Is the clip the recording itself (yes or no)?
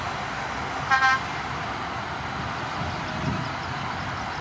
yes